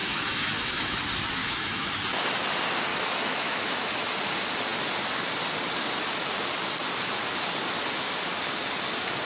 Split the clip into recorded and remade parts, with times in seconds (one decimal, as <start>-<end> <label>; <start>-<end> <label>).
0.0-1.0 remade; 1.0-1.4 recorded; 1.4-1.9 remade; 1.9-2.9 recorded; 2.9-4.0 remade; 4.0-9.2 recorded